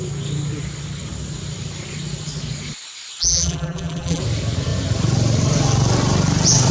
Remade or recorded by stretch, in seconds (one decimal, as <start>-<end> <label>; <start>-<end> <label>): 0.0-3.2 recorded; 3.2-4.2 remade; 4.2-6.7 recorded